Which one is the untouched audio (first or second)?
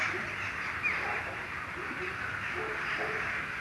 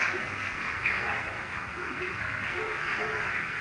first